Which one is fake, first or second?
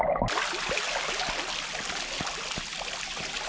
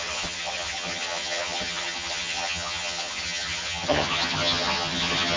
second